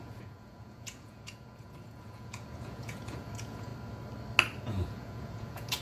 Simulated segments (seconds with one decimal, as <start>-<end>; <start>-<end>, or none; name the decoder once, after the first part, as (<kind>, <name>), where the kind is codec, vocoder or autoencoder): 0.0-3.7 (vocoder, Vocos); 4.6-5.8